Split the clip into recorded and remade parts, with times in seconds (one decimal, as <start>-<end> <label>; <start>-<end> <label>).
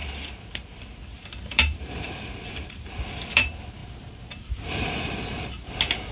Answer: 0.0-1.5 recorded; 1.5-3.8 remade; 3.8-6.1 recorded